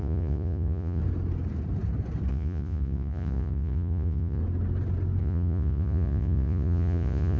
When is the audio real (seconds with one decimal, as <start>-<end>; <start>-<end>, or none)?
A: 1.0-2.3; 4.4-5.2